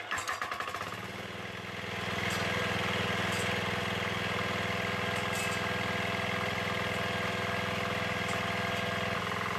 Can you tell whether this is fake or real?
real